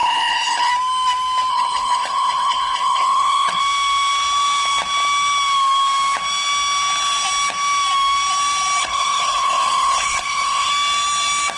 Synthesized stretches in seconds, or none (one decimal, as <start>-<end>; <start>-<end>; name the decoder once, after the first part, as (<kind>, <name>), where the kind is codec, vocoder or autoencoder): 0.0-0.7 (codec, HILCodec); 1.5-3.6; 8.8-10.7